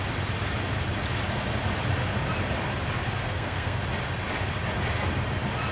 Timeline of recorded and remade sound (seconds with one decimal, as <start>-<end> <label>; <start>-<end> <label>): 0.0-3.2 recorded; 3.2-3.8 remade; 3.8-5.7 recorded